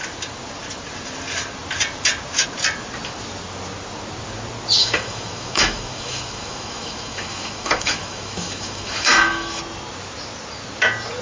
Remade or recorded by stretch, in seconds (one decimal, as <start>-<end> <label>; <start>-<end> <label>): 0.0-4.8 recorded; 4.8-9.6 remade; 9.6-11.2 recorded